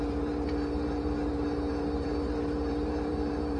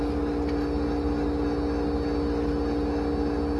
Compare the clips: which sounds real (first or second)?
second